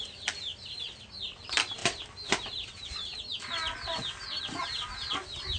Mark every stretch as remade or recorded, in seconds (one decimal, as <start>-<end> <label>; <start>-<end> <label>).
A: 0.0-5.6 recorded